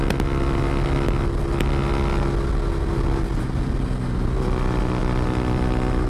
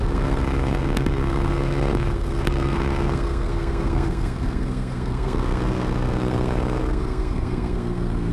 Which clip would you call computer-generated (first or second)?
second